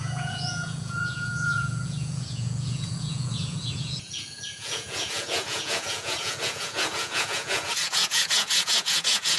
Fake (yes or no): yes